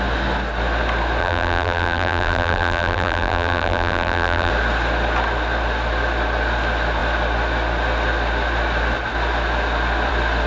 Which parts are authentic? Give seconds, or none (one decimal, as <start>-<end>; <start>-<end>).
0.0-1.2; 4.5-10.5